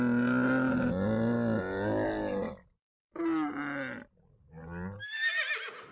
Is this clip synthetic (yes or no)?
no